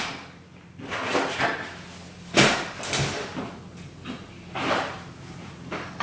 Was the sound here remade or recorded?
recorded